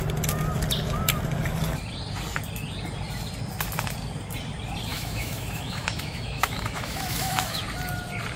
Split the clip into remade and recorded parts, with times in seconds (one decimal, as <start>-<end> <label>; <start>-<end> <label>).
0.0-4.9 recorded; 4.9-7.6 remade; 7.6-8.4 recorded